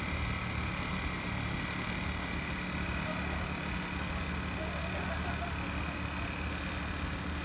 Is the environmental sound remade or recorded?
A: recorded